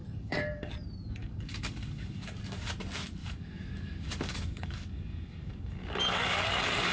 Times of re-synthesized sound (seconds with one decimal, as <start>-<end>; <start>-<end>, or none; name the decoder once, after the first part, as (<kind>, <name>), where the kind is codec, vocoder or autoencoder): 0.0-0.7 (codec, DAC); 1.2-2.7; 3.2-6.9

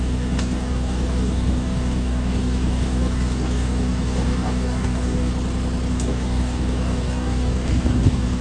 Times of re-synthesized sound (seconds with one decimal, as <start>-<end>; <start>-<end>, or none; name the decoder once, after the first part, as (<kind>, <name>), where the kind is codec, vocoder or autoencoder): 0.0-5.3 (codec, DAC); 5.9-8.4